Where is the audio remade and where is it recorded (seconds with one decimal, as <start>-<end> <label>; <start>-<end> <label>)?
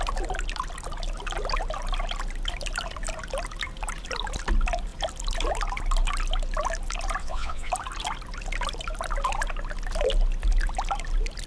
0.0-7.2 recorded; 7.2-7.7 remade; 7.7-11.5 recorded